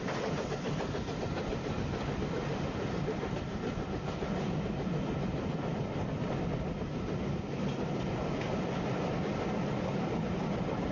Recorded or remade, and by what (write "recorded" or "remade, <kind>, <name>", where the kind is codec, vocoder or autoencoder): recorded